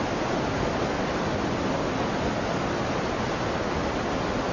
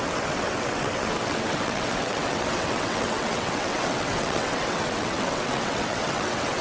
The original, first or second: first